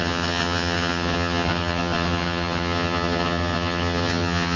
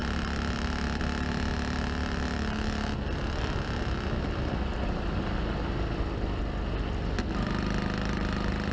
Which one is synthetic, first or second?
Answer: first